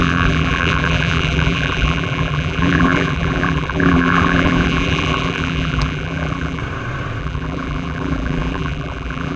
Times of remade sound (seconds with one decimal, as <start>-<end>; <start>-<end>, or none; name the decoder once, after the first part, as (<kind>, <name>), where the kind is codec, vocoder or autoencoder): 0.0-6.6 (vocoder, BigVGAN v2); 7.2-9.4